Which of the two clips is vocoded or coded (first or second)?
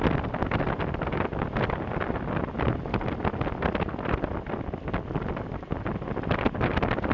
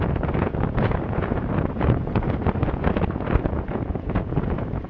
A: second